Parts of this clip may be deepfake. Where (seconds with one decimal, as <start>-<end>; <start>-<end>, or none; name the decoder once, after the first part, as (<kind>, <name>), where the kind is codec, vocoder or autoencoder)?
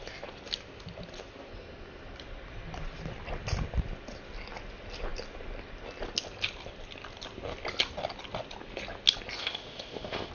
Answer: 9.4-10.3 (codec, ZipCodec)